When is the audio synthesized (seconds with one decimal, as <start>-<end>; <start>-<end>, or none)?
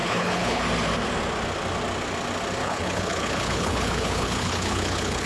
0.0-0.6; 2.6-5.3